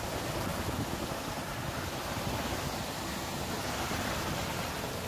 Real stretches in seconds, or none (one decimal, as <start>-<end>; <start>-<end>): 0.0-5.1